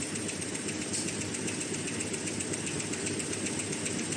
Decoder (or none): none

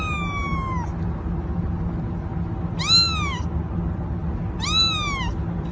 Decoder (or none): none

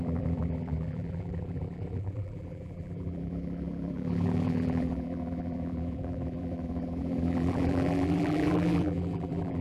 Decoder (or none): vocoder, BigVGAN v2